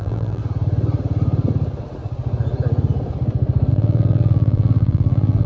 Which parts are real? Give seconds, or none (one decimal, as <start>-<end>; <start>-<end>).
0.4-3.7